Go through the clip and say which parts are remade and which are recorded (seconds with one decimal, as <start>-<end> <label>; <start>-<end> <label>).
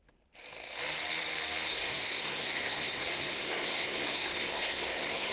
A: 0.0-1.7 recorded; 1.7-5.3 remade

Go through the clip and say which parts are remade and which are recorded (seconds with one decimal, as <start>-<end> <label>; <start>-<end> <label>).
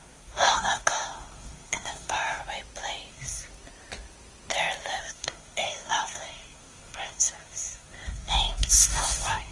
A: 0.0-2.4 remade; 2.4-3.1 recorded; 3.1-3.5 remade; 3.5-5.0 recorded; 5.0-9.5 remade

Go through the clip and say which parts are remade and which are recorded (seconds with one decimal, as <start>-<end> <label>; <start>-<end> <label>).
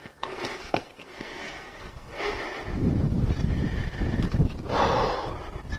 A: 0.0-2.4 remade; 2.4-5.8 recorded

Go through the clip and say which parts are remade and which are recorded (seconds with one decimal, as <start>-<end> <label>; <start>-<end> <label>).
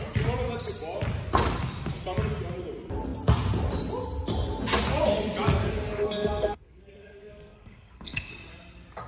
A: 0.0-6.0 recorded; 6.0-8.3 remade; 8.3-9.1 recorded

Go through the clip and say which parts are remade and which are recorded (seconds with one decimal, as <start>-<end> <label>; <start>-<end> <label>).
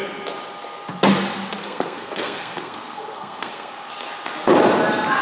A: 0.0-1.6 recorded; 1.6-3.9 remade; 3.9-5.2 recorded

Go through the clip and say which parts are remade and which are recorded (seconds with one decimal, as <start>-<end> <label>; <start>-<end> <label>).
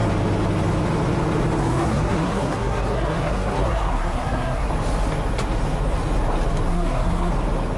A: 0.0-1.6 recorded; 1.6-4.7 remade; 4.7-6.7 recorded; 6.7-7.3 remade; 7.3-7.8 recorded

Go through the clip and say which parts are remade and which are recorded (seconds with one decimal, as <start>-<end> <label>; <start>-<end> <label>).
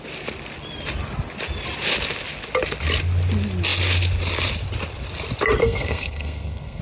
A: 0.0-5.6 recorded; 5.6-6.8 remade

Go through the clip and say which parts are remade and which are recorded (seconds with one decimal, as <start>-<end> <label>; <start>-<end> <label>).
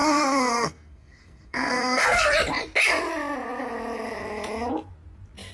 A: 0.0-2.2 remade; 2.2-5.5 recorded